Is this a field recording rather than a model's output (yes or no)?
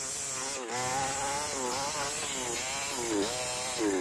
yes